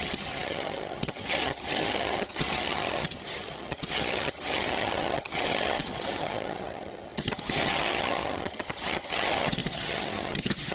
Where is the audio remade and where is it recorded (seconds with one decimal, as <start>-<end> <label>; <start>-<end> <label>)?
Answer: 0.0-10.7 remade